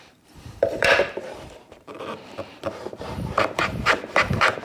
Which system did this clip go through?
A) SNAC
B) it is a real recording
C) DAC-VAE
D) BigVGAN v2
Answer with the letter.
D